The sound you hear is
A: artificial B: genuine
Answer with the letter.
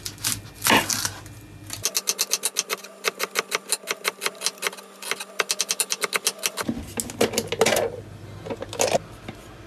B